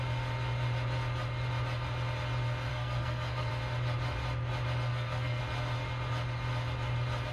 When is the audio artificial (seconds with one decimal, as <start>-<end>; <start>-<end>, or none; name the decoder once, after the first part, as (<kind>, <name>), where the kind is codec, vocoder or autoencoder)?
2.7-3.5 (codec, SNAC); 4.9-5.4